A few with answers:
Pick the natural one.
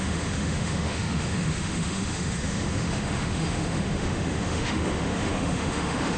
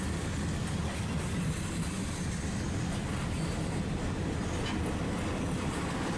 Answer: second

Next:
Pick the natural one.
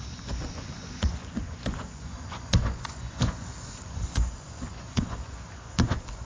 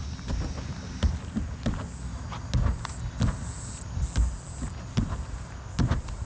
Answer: second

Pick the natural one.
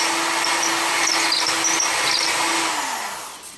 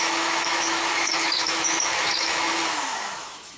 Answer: first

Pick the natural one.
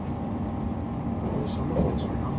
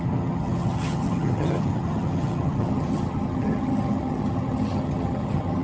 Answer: first